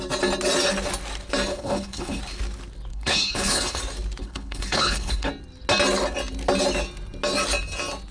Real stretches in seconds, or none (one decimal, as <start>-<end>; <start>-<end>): 0.0-1.5; 2.2-2.9; 3.8-4.2; 5.3-8.1